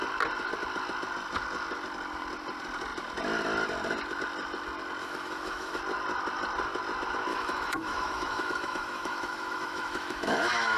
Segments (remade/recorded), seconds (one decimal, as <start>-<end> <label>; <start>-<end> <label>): 0.0-5.0 recorded; 5.0-5.8 remade; 5.8-7.3 recorded; 7.3-10.8 remade